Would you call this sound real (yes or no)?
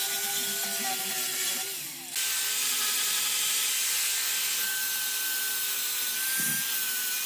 yes